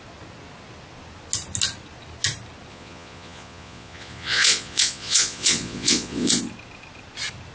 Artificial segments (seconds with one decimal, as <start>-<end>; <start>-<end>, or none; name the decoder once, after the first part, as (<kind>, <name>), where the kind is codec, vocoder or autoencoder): 2.7-6.4 (vocoder, Vocos)